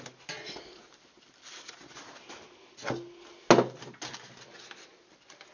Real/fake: real